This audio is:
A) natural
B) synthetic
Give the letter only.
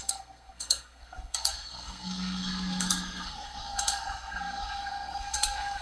B